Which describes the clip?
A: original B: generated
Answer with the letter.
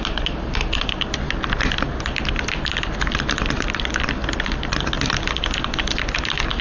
A